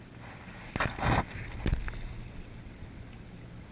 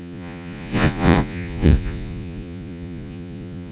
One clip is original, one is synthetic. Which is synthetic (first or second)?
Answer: second